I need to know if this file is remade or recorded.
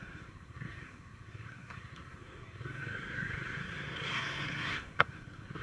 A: remade